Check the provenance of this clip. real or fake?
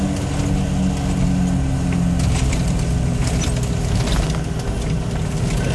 real